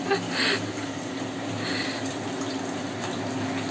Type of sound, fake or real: real